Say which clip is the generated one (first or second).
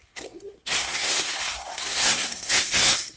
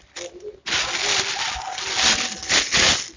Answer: first